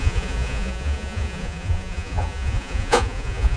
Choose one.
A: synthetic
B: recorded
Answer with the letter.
A